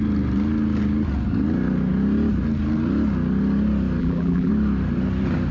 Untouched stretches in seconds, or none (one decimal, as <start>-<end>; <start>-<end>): 0.0-4.0; 4.5-5.5